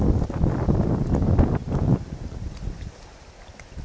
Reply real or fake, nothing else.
real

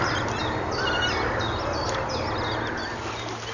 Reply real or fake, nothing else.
real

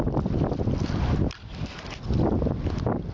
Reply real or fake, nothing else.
real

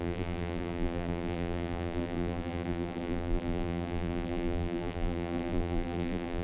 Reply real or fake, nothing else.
fake